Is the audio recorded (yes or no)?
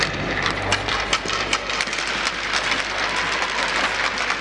yes